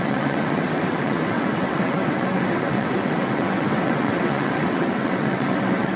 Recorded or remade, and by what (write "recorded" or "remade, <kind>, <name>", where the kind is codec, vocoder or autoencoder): remade, vocoder, WaveNeXt